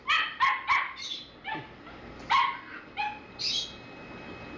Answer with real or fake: real